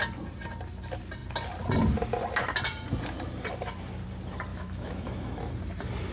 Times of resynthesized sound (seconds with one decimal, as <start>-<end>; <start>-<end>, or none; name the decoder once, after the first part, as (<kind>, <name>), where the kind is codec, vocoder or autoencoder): 4.5-5.4 (autoencoder, DAC-VAE)